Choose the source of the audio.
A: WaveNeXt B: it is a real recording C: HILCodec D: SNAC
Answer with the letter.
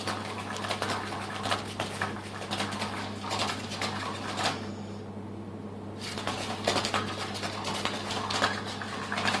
B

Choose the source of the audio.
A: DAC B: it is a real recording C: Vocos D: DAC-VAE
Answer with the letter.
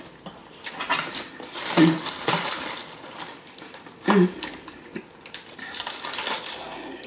B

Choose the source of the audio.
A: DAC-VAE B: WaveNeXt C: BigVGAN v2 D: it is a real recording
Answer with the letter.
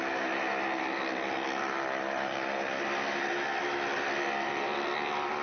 D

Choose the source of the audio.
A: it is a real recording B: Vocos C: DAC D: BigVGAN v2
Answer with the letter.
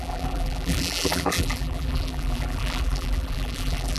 D